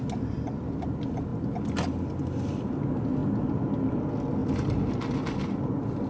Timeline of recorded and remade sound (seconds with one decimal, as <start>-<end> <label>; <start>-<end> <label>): 0.0-6.1 recorded